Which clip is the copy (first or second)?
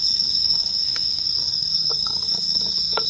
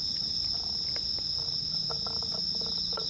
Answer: first